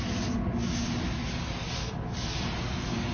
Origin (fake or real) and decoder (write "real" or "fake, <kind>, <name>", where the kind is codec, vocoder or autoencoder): real